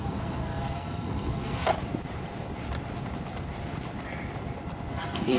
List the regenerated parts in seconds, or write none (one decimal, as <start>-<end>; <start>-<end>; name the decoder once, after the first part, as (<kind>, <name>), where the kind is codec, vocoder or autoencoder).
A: 0.0-1.7 (codec, SNAC); 4.9-5.4